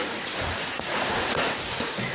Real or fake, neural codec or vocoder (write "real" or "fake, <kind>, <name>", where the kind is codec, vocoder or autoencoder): fake, vocoder, Vocos